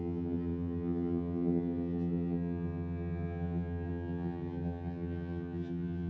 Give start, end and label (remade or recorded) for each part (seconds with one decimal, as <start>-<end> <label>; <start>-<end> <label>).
0.0-6.1 remade